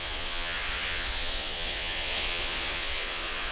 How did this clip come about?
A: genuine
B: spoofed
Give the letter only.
B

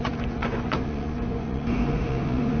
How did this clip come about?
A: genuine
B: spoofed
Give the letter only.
B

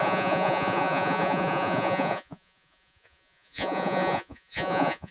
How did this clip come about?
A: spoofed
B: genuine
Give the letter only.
A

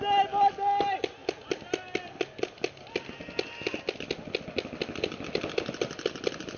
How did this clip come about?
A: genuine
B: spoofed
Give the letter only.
A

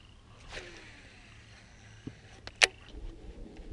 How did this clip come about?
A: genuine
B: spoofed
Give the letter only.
A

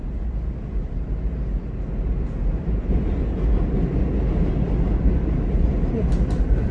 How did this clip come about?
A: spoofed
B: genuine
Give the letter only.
B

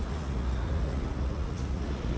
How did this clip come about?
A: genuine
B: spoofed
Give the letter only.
B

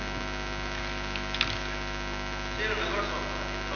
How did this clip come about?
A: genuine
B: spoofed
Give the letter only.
A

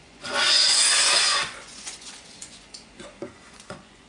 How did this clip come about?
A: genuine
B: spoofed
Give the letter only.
B